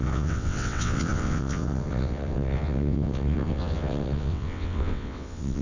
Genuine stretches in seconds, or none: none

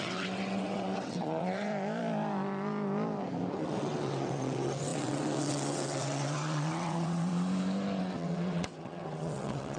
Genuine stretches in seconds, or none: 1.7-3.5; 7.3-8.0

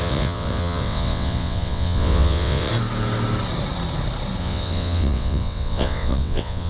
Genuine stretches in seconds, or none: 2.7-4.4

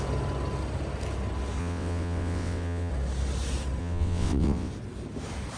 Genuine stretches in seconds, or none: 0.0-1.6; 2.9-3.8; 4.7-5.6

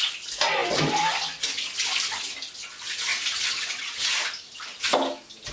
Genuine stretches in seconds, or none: 0.0-3.1; 4.1-5.5

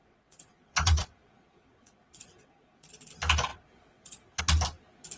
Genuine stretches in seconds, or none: 2.9-3.5; 4.4-5.2